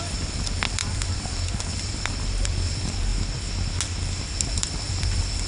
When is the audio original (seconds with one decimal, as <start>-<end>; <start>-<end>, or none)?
3.1-4.5